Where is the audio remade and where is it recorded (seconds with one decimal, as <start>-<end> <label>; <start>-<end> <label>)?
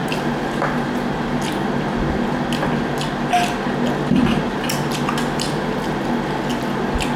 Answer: 0.0-7.2 recorded